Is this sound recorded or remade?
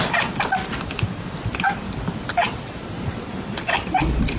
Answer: recorded